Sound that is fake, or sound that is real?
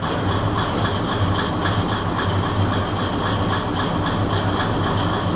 real